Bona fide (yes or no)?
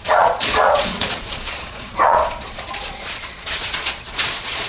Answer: no